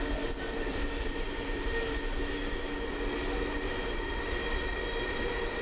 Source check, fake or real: real